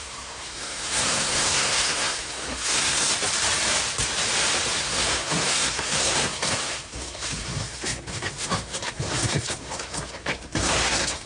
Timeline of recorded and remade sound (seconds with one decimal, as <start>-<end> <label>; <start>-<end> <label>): 0.0-3.1 remade; 3.1-4.8 recorded; 4.8-11.3 remade